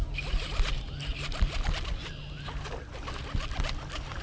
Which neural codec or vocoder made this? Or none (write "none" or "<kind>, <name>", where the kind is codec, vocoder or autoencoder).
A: none